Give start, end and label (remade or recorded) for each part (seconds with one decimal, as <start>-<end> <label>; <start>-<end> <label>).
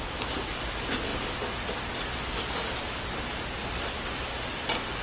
0.0-5.0 recorded